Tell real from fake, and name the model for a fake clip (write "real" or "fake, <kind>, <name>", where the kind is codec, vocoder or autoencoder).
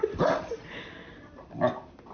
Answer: real